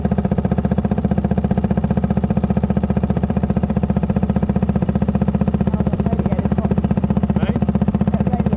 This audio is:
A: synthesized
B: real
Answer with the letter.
A